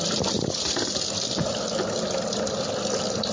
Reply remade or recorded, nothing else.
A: remade